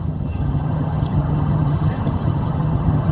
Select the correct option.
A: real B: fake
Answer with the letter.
B